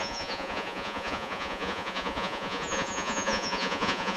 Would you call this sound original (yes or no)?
no